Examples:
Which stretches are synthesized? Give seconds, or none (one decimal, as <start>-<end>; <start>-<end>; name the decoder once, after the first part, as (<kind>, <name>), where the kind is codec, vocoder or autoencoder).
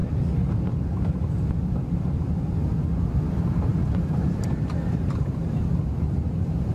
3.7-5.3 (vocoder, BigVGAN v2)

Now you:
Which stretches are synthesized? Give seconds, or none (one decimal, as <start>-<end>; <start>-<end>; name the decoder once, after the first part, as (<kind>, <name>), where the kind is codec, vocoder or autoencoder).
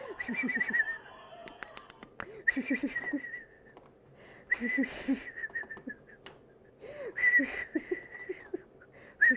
8.1-8.8 (vocoder, BigVGAN v2)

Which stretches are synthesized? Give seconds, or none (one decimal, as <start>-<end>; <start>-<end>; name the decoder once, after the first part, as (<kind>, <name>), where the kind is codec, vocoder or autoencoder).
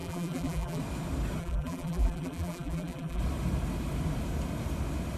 0.0-0.8 (vocoder, BigVGAN v2); 1.4-3.2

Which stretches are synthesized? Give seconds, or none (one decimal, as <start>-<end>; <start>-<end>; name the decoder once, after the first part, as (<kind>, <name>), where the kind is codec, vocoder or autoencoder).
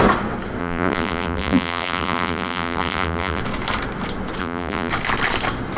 0.6-3.4 (vocoder, BigVGAN v2); 4.4-4.9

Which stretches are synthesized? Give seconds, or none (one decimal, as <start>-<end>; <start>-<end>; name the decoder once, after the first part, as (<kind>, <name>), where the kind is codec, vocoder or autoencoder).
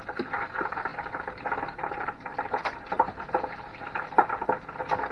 0.0-3.7 (vocoder, BigVGAN v2)